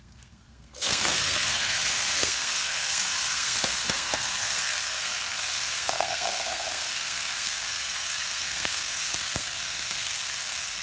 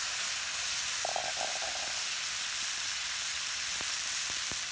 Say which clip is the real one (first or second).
second